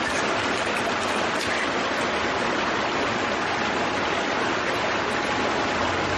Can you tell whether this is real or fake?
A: real